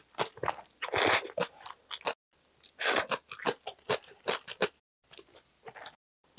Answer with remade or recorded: recorded